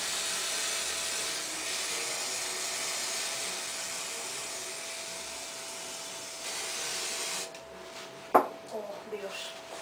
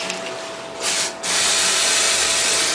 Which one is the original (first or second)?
first